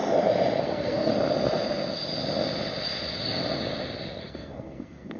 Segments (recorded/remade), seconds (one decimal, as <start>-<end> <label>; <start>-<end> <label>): 0.0-0.6 recorded; 0.6-1.1 remade; 1.1-4.2 recorded; 4.2-5.2 remade